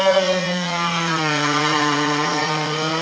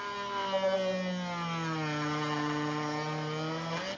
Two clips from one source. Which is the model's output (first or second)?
first